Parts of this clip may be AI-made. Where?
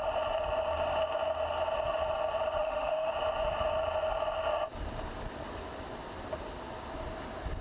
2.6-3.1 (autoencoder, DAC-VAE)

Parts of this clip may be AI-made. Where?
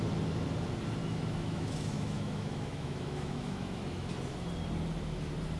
1.0-4.1 (autoencoder, DAC-VAE)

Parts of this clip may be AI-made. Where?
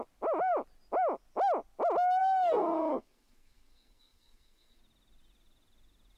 2.2-4.8 (codec, SNAC)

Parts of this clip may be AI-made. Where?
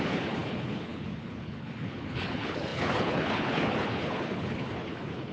0.0-5.3 (codec, HILCodec)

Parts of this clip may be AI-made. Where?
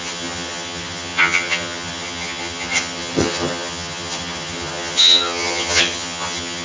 0.0-6.6 (vocoder, HiFi-GAN)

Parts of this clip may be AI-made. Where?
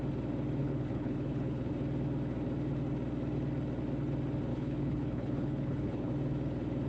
0.6-1.7 (codec, HILCodec); 4.5-6.1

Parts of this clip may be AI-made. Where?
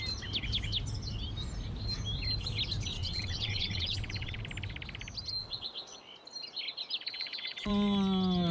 2.9-4.4 (vocoder, WaveNeXt); 5.4-6.0; 7.1-7.7